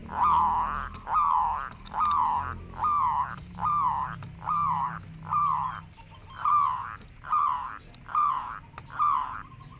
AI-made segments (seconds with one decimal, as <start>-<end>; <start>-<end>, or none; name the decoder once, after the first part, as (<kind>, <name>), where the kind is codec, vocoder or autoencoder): none